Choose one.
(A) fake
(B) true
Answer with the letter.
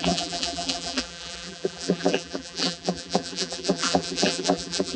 A